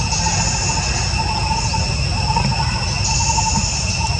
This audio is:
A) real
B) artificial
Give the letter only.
A